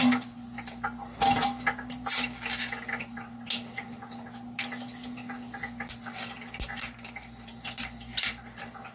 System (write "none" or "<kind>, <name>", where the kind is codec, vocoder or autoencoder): none